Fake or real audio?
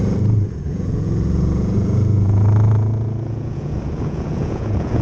fake